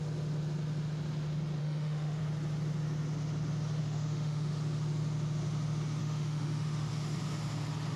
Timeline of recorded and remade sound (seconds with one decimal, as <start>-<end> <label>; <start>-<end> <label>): 0.0-1.6 recorded; 1.6-2.2 remade; 2.2-3.8 recorded; 3.8-4.5 remade; 4.5-6.0 recorded; 6.0-6.9 remade; 6.9-8.0 recorded